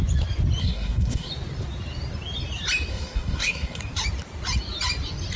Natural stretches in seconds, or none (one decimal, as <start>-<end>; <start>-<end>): 0.0-0.6; 1.3-2.9; 3.8-5.4